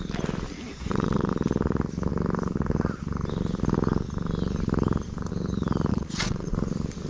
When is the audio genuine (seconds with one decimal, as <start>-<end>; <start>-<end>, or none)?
0.0-0.8; 1.3-5.9; 6.5-7.1